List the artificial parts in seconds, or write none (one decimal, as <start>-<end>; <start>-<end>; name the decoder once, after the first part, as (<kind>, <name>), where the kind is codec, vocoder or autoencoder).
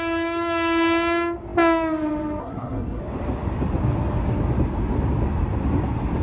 2.4-3.0 (codec, SNAC)